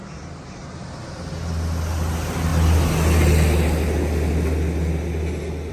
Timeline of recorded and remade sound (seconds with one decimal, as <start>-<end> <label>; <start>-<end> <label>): 0.0-5.7 recorded